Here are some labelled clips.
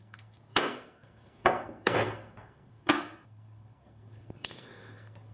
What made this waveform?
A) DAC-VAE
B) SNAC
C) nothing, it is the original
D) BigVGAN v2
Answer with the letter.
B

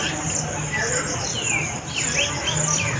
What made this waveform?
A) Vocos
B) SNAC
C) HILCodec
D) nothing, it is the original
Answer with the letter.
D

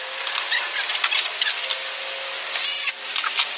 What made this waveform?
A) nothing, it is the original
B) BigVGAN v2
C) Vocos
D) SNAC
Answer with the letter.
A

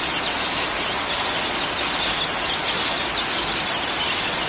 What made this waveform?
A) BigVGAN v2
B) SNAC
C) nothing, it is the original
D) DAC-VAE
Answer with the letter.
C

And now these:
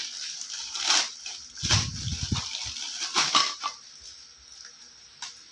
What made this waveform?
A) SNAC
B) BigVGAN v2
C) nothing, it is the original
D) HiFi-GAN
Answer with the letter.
C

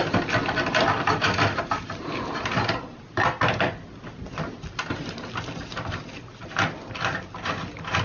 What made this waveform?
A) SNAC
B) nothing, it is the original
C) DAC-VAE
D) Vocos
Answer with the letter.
B